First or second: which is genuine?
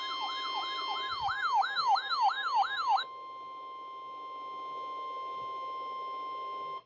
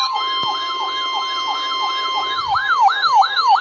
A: first